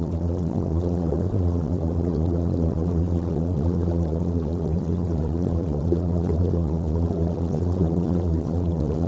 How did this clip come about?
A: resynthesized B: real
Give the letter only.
A